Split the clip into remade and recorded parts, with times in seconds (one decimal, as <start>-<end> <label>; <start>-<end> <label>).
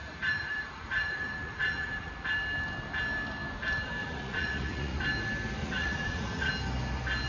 0.0-2.1 remade; 2.1-4.0 recorded; 4.0-5.0 remade; 5.0-5.6 recorded; 5.6-6.5 remade; 6.5-7.3 recorded